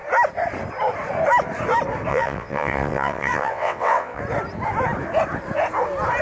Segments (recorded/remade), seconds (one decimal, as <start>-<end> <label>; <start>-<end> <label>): 0.0-2.1 recorded; 2.1-4.2 remade; 4.2-6.2 recorded